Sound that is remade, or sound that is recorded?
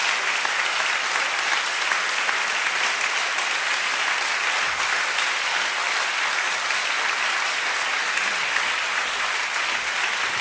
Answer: recorded